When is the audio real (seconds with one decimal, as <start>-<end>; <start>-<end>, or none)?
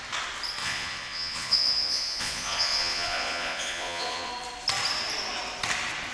0.0-0.6; 4.3-6.1